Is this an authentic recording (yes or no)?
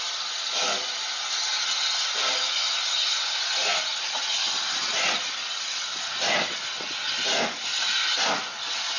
yes